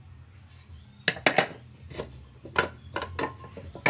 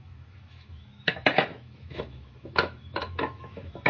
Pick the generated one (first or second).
second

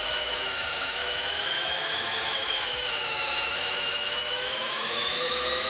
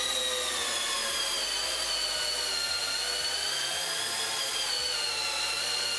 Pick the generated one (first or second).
first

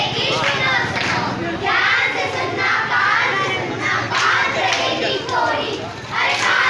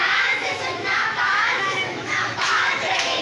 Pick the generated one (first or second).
second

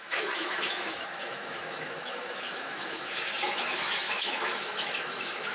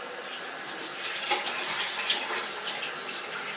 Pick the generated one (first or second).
first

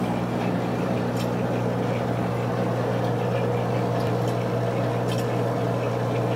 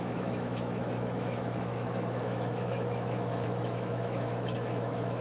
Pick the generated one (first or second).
second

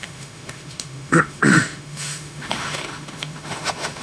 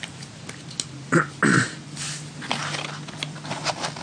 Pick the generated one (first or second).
first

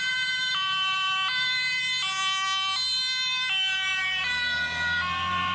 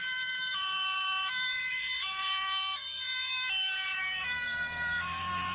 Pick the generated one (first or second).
second